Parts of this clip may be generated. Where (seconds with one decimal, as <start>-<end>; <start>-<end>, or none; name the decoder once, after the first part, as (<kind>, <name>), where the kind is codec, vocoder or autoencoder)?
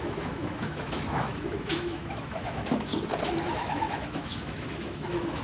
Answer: 0.0-2.9 (autoencoder, DAC-VAE); 3.5-5.4